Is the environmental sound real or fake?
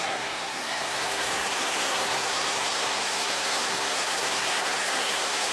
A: fake